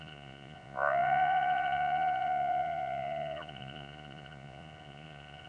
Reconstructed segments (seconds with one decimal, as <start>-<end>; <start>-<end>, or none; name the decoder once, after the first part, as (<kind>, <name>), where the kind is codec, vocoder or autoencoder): 0.0-5.5 (vocoder, Vocos)